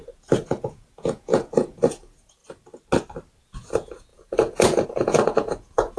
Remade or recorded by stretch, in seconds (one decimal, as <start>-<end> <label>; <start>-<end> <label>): 0.0-2.4 remade; 2.4-3.4 recorded; 3.4-6.0 remade